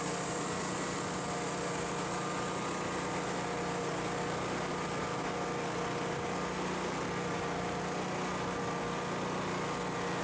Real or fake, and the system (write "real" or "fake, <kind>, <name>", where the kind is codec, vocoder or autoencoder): real